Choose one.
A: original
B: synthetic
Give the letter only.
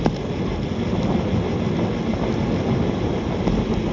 A